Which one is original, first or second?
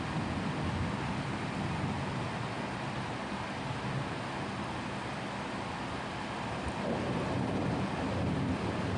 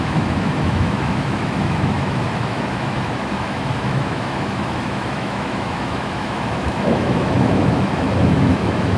first